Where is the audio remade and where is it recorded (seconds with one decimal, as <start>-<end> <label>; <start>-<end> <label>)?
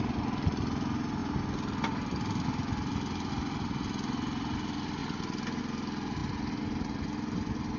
0.0-7.8 recorded